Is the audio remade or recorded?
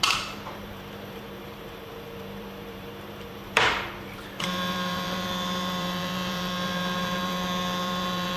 remade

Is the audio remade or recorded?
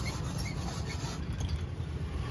recorded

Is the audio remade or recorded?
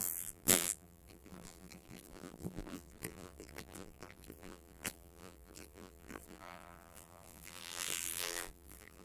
remade